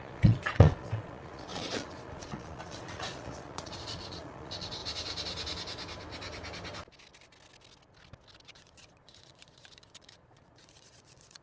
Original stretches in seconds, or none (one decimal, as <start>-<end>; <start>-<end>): 4.8-8.4